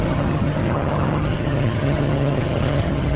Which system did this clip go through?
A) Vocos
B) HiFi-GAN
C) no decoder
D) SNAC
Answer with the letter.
B